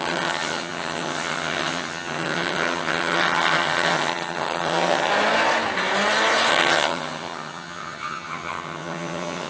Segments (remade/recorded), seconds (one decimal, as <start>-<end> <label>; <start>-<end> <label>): 0.0-5.1 remade; 5.1-6.5 recorded; 6.5-9.5 remade